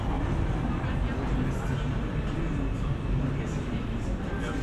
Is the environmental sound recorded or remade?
recorded